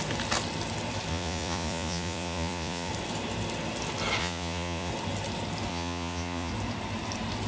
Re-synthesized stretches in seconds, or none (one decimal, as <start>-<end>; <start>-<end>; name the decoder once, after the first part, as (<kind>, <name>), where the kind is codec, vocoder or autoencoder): 1.1-2.9 (vocoder, Vocos); 4.2-4.9; 5.7-6.5